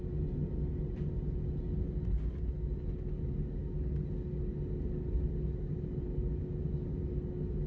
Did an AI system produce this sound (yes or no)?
no